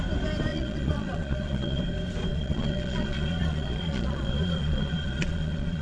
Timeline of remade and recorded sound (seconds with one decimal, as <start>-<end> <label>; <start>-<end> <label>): 0.0-0.5 recorded; 0.5-1.8 remade; 1.8-2.3 recorded; 2.3-5.8 remade